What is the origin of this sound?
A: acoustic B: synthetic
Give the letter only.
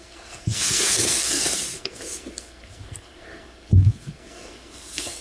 B